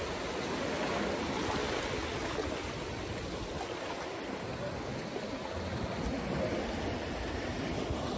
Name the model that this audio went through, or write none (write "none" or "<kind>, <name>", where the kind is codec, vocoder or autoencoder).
none